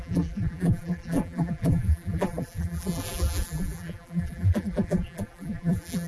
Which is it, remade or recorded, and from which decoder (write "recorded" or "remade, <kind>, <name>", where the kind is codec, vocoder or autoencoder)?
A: remade, vocoder, BigVGAN v2